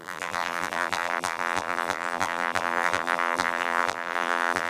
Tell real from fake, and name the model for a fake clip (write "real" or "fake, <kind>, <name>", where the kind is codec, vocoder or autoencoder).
fake, vocoder, BigVGAN v2